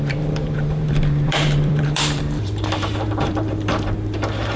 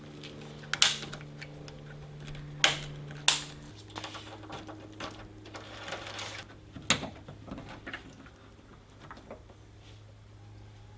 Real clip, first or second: second